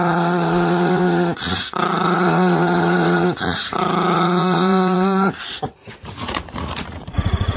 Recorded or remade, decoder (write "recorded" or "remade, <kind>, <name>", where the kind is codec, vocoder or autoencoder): remade, vocoder, Vocos